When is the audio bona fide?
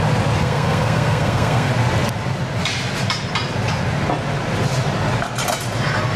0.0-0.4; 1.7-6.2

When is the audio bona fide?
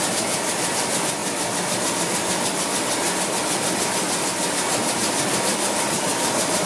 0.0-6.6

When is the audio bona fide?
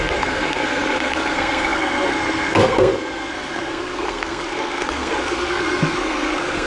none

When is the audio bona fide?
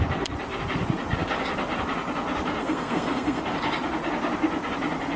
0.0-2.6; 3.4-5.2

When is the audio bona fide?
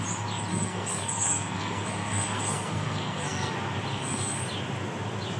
0.0-0.5; 3.5-3.9; 4.4-5.4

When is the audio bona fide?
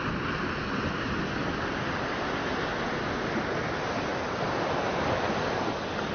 0.0-6.1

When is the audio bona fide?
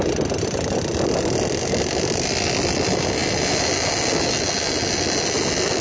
0.0-5.8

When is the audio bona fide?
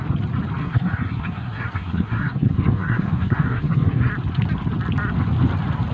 0.0-0.6; 4.1-5.9